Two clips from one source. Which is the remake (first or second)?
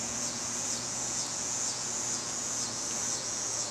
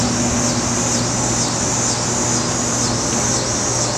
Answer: first